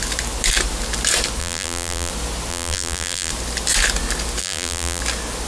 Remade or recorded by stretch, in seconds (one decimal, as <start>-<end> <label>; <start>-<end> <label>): 0.0-1.4 recorded; 1.4-2.1 remade; 2.1-2.5 recorded; 2.5-3.3 remade; 3.3-4.4 recorded; 4.4-5.0 remade; 5.0-5.5 recorded